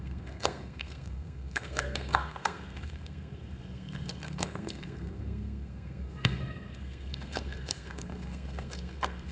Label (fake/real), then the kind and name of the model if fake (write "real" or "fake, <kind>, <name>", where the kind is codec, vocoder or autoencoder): fake, codec, SNAC